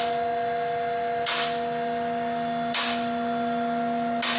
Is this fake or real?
real